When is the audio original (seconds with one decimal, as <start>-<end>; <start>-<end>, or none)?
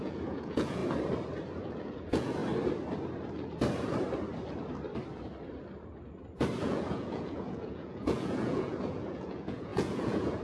0.8-1.6; 2.4-6.6